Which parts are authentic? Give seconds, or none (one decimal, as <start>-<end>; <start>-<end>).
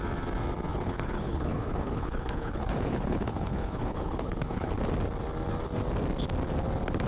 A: 0.0-0.7; 4.7-7.1